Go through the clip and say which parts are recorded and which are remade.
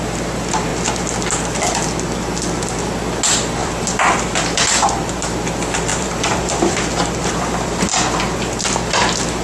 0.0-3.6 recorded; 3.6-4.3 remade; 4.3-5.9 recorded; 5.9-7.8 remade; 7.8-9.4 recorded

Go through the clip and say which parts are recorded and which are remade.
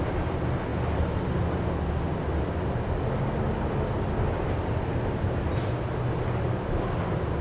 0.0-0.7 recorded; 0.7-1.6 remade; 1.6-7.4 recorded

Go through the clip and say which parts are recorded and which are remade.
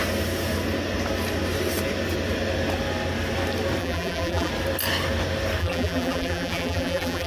0.0-3.8 recorded; 3.8-4.5 remade; 4.5-5.6 recorded; 5.6-7.3 remade